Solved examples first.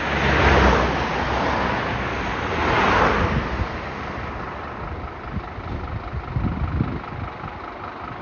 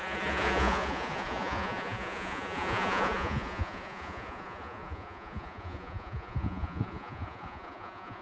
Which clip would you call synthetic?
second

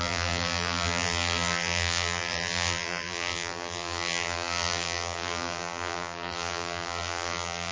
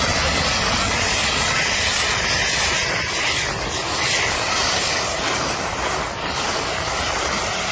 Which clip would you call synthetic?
first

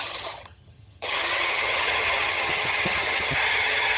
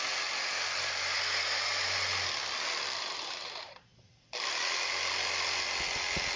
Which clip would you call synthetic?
first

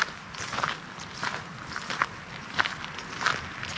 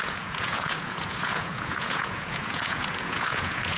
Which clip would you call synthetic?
second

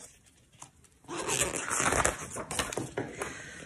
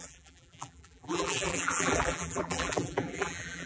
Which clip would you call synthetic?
second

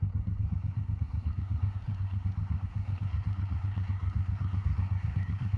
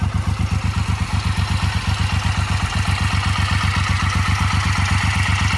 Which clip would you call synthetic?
first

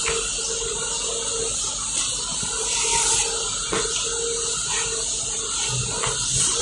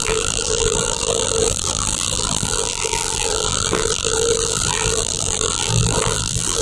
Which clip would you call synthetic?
second